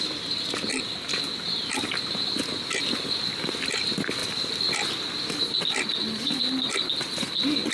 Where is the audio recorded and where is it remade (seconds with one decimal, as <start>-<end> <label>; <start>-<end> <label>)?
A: 0.0-7.7 recorded